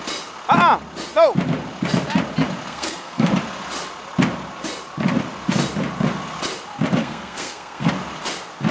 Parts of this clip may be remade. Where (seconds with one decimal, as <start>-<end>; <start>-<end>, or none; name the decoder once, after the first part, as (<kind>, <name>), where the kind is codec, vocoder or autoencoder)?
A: 2.7-3.3 (codec, SNAC); 7.0-7.9